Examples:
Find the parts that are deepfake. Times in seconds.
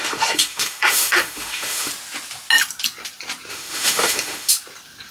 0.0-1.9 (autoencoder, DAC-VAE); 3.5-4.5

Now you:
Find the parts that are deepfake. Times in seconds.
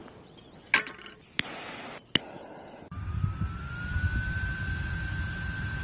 none